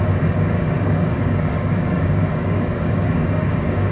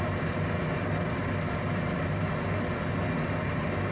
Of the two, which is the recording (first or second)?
second